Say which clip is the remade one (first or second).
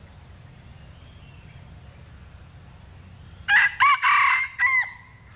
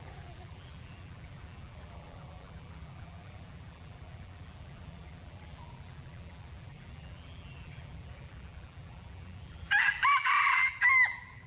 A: second